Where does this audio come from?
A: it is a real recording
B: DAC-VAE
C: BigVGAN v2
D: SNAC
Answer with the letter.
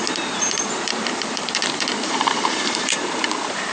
C